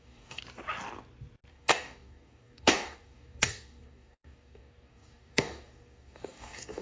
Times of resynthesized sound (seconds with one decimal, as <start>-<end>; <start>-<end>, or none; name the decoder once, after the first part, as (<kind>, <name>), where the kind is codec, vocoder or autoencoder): 0.0-0.4 (codec, DAC); 1.5-6.8